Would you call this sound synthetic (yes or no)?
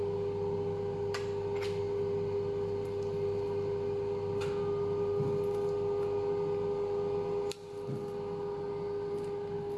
no